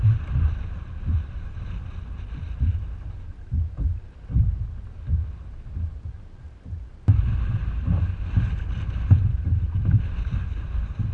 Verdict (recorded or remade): recorded